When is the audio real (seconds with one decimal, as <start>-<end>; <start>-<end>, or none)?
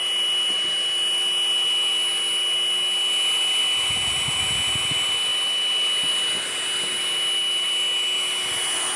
0.0-9.0